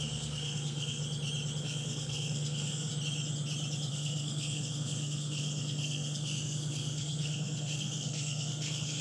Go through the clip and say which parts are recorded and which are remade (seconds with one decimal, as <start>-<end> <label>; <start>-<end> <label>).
0.0-1.0 remade; 1.0-1.6 recorded; 1.6-2.9 remade; 2.9-3.9 recorded; 3.9-9.0 remade